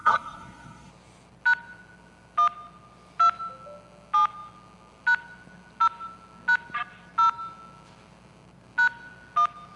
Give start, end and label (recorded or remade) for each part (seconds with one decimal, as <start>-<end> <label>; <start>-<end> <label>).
0.0-0.9 remade; 0.9-9.8 recorded